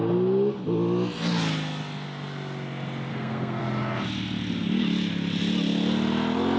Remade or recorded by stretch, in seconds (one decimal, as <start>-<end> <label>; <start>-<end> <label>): 0.0-3.1 recorded; 3.1-3.6 remade; 3.6-6.6 recorded